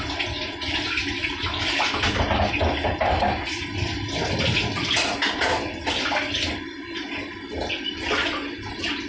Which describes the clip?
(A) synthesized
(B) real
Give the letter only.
B